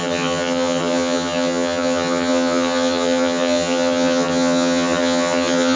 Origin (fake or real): fake